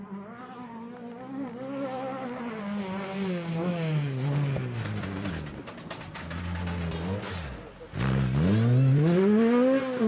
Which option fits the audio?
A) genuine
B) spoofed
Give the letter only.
A